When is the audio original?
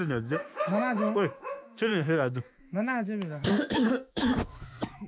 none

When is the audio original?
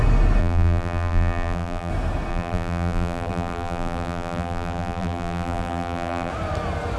0.0-0.4; 1.9-2.3; 6.3-7.0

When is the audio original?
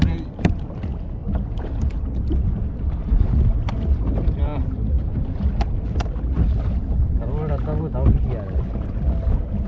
0.0-9.7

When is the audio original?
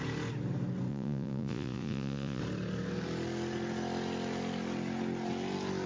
0.0-0.9; 2.4-5.9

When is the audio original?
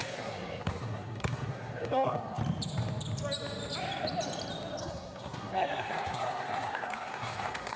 2.4-4.8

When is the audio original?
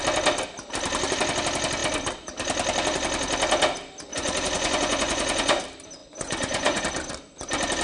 0.0-4.1; 5.6-6.0; 6.8-7.8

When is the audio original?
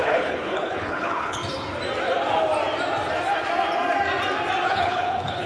1.4-4.7